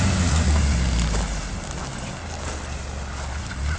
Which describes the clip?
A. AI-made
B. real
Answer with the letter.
B